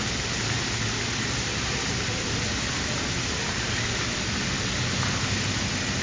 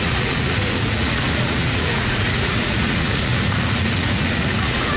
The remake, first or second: second